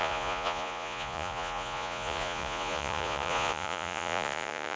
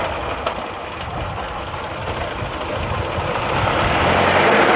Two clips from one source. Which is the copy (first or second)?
first